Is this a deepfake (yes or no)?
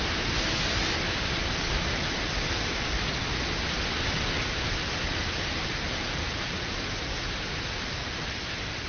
no